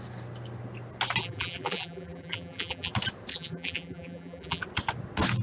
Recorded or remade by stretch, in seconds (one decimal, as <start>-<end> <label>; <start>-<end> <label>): 0.0-1.2 recorded; 1.2-2.9 remade; 2.9-3.3 recorded; 3.3-4.6 remade; 4.6-5.4 recorded